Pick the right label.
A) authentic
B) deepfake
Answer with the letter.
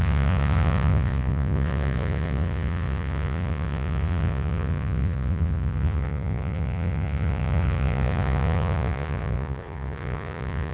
B